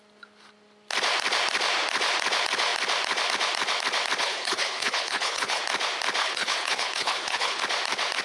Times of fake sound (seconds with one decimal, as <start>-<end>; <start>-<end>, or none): 4.2-5.6; 6.2-7.6